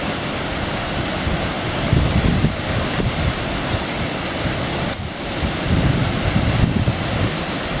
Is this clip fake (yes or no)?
no